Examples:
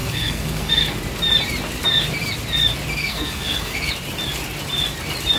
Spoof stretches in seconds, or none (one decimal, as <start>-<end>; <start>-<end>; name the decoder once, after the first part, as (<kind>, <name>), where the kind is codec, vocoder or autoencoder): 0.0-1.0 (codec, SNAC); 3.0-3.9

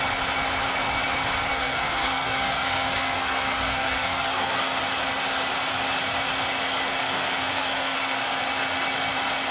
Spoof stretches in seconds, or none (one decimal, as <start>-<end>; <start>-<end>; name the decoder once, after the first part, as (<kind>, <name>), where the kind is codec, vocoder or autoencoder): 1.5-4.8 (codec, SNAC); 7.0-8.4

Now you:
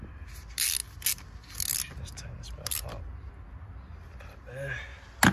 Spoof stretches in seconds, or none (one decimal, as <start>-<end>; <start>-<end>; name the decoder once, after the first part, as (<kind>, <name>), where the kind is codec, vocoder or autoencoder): none

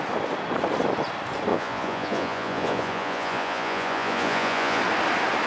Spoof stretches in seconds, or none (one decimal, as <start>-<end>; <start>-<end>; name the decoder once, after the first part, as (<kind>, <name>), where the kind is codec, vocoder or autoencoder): 1.5-4.8 (vocoder, Vocos)

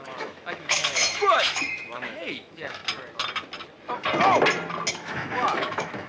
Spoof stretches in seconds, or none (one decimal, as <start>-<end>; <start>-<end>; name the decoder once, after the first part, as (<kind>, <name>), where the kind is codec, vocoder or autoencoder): 0.0-2.8 (autoencoder, DAC-VAE); 4.9-6.1